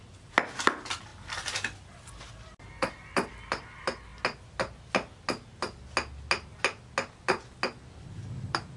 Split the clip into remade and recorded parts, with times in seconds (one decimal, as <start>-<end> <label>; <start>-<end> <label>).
0.0-8.8 recorded